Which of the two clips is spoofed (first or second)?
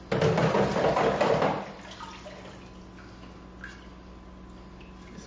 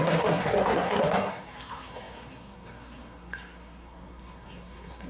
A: second